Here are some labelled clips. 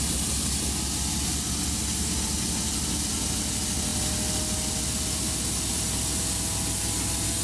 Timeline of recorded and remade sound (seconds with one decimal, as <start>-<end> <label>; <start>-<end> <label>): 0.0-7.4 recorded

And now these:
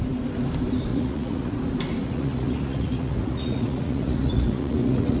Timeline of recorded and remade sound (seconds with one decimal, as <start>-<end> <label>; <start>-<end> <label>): 0.0-0.9 recorded; 0.9-1.5 remade; 1.5-2.0 recorded; 2.0-5.2 remade

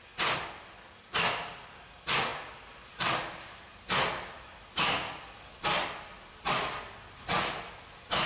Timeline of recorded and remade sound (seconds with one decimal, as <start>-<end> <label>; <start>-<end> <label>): 0.0-8.3 recorded

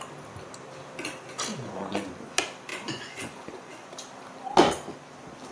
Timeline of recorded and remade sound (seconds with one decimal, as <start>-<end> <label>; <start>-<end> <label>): 0.0-1.5 recorded; 1.5-2.1 remade; 2.1-2.7 recorded; 2.7-3.9 remade; 3.9-5.5 recorded

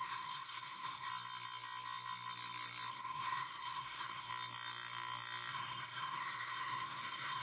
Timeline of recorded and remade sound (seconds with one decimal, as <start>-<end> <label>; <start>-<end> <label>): 0.0-1.1 remade; 1.1-2.9 recorded; 2.9-4.3 remade; 4.3-5.5 recorded; 5.5-7.4 remade